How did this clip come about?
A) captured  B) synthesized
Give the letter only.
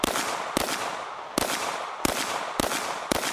A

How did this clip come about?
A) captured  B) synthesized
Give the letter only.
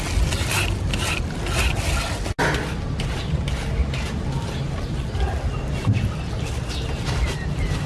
A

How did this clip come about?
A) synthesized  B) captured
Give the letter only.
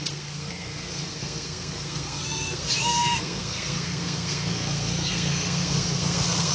A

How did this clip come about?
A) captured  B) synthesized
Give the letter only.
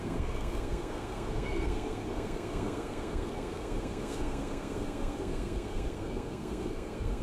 B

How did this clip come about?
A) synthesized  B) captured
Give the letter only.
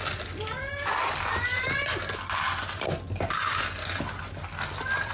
B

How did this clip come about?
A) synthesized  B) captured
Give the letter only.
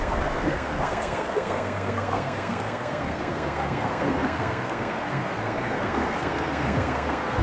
A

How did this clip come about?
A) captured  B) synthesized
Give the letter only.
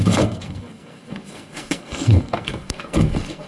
B